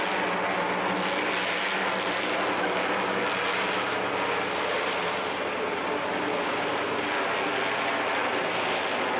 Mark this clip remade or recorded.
recorded